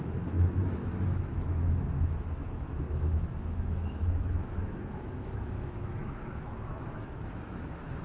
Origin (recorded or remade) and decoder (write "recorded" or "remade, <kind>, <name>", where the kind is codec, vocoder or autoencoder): remade, autoencoder, DAC-VAE